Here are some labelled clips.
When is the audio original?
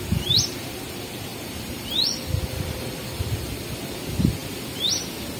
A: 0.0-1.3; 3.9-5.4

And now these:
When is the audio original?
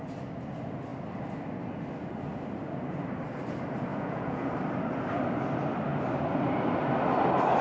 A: 0.0-3.9; 4.5-7.6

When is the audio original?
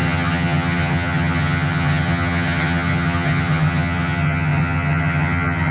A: none